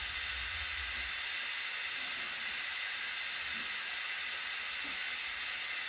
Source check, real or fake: real